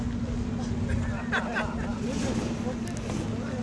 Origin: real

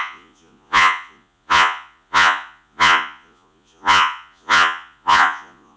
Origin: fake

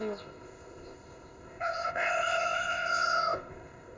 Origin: fake